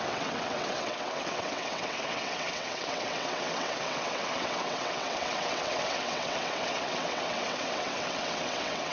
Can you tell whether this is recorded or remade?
remade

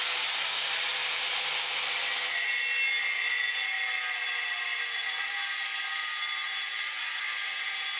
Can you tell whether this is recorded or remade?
recorded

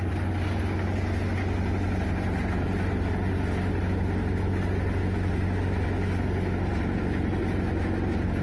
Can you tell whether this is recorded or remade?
recorded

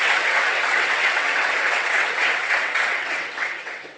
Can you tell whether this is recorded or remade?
remade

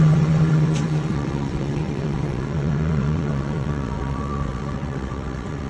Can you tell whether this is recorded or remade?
remade